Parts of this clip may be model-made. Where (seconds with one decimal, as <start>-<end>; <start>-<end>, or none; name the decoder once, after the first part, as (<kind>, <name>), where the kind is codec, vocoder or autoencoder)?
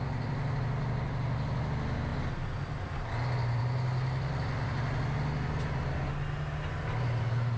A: none